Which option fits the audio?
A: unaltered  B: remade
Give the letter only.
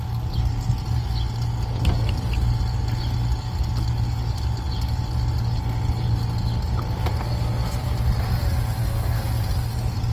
A